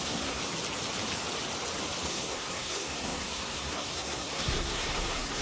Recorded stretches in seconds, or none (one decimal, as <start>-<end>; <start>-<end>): 0.4-2.1